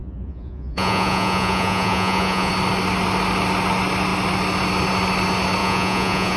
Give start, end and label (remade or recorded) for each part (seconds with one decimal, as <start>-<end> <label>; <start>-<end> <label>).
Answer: 0.0-2.5 remade; 2.5-5.6 recorded; 5.6-6.4 remade